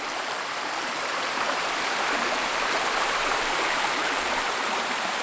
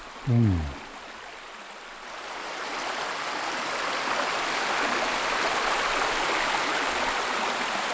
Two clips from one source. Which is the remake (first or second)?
first